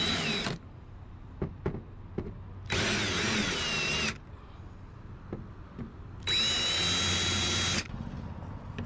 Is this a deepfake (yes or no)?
no